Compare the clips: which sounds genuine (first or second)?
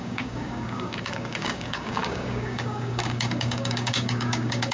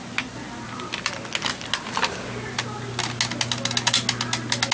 second